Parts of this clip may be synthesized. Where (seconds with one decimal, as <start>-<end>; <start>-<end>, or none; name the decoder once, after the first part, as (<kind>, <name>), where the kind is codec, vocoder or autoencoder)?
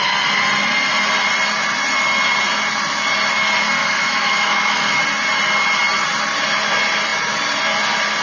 3.8-5.0 (autoencoder, DAC-VAE)